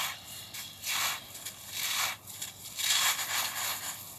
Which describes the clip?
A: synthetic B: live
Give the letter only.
B